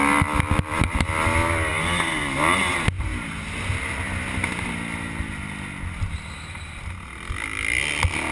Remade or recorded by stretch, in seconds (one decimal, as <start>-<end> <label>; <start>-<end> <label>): 0.0-8.3 recorded